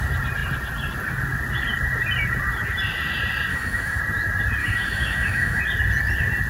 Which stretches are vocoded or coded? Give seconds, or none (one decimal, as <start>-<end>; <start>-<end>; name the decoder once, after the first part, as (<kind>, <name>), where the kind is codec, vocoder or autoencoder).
3.5-4.0 (autoencoder, DAC-VAE); 4.6-5.6